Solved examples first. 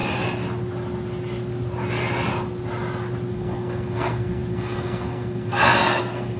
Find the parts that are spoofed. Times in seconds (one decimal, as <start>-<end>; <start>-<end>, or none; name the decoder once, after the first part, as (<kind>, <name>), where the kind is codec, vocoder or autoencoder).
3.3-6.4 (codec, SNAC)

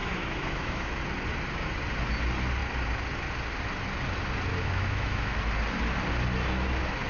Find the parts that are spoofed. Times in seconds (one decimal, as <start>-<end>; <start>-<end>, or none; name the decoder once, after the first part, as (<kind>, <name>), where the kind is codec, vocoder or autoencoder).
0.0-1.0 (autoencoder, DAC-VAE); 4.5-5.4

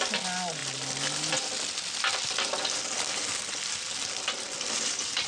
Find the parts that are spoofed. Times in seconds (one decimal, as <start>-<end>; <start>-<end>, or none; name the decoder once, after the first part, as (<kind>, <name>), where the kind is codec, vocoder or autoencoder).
none

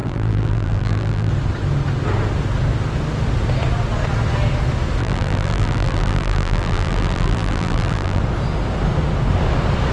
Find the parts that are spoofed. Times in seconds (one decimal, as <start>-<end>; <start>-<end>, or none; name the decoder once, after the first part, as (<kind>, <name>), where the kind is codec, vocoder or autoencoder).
0.0-1.3 (vocoder, BigVGAN v2); 5.0-8.2